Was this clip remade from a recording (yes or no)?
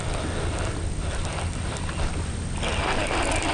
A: no